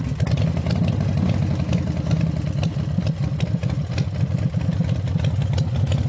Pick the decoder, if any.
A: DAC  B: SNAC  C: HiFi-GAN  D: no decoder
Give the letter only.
D